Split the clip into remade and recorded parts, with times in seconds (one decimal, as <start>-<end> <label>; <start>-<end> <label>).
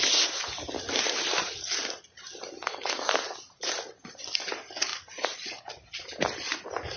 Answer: 0.0-4.9 recorded; 4.9-5.5 remade; 5.5-7.0 recorded